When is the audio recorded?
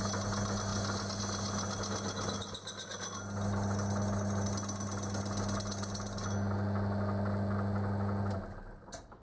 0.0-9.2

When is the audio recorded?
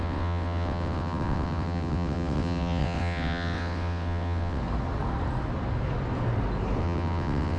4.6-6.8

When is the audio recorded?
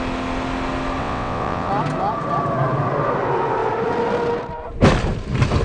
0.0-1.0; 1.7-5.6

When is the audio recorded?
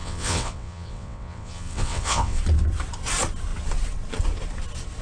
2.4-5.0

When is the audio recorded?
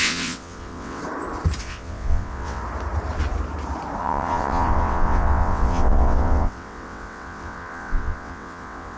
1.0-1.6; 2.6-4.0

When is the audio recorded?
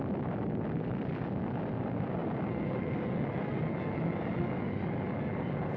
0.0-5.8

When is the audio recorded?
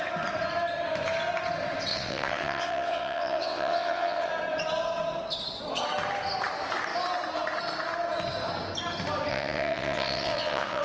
0.0-1.9; 4.3-9.3